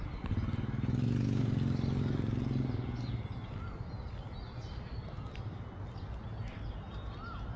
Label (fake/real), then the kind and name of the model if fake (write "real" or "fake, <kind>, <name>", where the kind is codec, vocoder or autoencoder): real